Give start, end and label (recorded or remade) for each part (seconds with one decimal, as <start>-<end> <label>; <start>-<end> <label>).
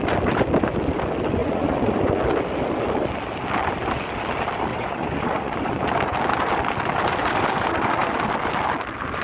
0.0-1.4 recorded; 1.4-2.2 remade; 2.2-4.7 recorded; 4.7-5.8 remade; 5.8-9.2 recorded